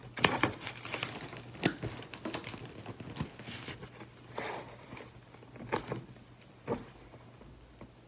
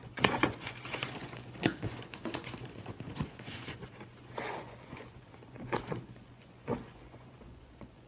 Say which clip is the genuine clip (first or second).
first